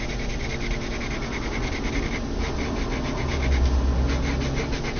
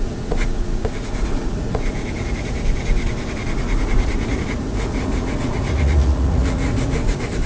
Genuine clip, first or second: first